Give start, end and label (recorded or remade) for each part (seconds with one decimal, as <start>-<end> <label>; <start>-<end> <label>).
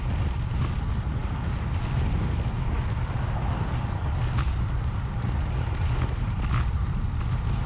0.0-7.7 recorded